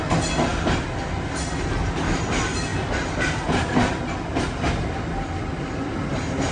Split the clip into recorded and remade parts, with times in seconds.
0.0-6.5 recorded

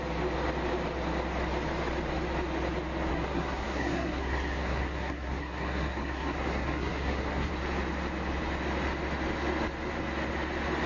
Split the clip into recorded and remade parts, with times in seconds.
0.0-3.1 recorded; 3.1-7.5 remade; 7.5-10.9 recorded

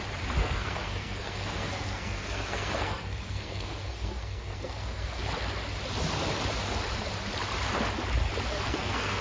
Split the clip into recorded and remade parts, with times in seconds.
0.0-0.4 recorded; 0.4-5.3 remade; 5.3-8.5 recorded; 8.5-9.2 remade

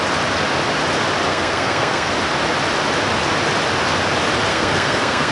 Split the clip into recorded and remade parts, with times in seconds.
0.0-1.3 recorded; 1.3-2.1 remade; 2.1-4.5 recorded; 4.5-5.3 remade